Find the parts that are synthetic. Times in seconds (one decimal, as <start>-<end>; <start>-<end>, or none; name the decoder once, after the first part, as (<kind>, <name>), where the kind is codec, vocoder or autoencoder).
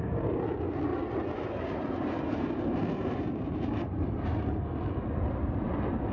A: 0.9-4.6 (vocoder, BigVGAN v2)